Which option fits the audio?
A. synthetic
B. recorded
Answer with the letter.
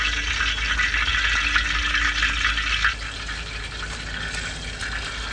B